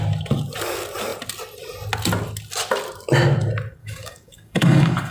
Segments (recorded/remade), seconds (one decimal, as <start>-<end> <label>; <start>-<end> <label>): 0.0-3.8 recorded; 3.8-5.1 remade